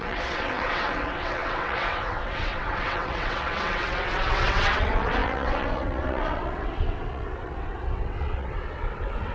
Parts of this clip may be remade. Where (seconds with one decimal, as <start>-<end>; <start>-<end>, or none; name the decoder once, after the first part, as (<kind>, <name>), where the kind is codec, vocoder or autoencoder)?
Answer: 0.0-9.3 (vocoder, WaveNeXt)

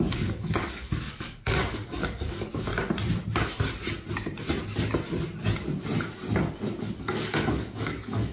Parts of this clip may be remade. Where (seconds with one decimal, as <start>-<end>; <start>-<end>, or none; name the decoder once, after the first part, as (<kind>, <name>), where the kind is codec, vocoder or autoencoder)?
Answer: 0.0-2.7 (codec, DAC); 6.8-8.3

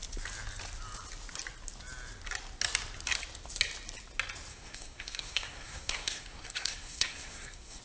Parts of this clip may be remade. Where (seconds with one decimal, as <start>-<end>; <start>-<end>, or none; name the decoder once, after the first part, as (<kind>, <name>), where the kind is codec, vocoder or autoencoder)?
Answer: 4.5-7.8 (codec, SNAC)

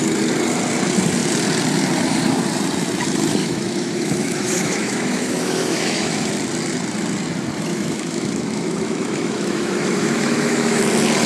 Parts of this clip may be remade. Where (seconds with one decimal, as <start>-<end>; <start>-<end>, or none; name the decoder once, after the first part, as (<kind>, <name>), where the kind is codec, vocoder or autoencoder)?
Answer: 3.4-6.3 (autoencoder, DAC-VAE); 7.7-10.8

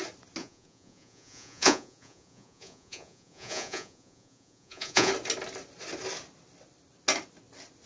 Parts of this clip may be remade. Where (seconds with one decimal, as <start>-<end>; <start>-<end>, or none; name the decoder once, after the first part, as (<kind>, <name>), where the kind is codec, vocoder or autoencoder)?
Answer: 0.4-5.1 (vocoder, Vocos)